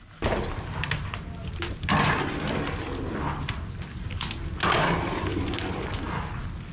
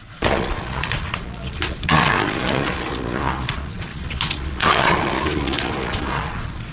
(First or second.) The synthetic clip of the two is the second